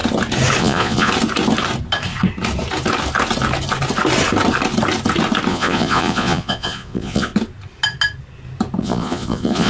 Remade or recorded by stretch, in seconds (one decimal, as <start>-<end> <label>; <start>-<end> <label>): 0.0-0.6 recorded; 0.6-1.1 remade; 1.1-5.5 recorded; 5.5-7.3 remade; 7.3-8.8 recorded; 8.8-9.7 remade